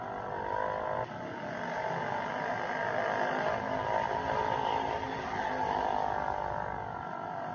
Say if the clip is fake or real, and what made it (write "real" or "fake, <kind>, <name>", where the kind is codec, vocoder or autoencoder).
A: real